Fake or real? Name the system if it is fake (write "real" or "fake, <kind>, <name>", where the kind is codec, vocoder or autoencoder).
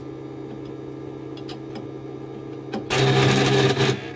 real